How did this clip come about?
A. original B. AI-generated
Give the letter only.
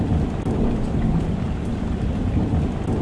A